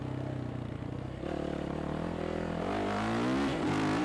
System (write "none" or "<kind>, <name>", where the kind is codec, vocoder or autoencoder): none